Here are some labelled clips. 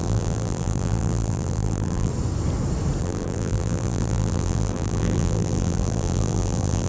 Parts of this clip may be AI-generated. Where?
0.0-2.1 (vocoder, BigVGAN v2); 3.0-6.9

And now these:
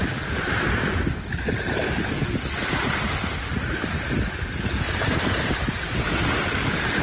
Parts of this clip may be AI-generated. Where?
none

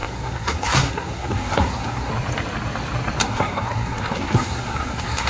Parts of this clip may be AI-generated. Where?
0.0-2.1 (codec, SNAC); 3.2-5.3

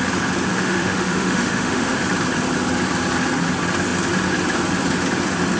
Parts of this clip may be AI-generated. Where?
0.5-2.0 (autoencoder, DAC-VAE)

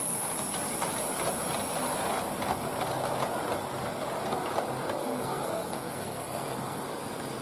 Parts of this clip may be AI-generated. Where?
5.0-7.0 (codec, SNAC)

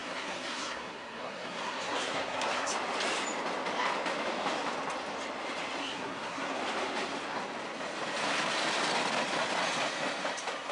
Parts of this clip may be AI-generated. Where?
0.0-2.7 (codec, SNAC); 5.8-6.6

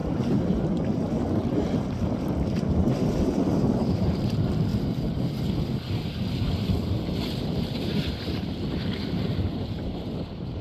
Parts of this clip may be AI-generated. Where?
2.9-4.7 (vocoder, BigVGAN v2); 6.7-10.6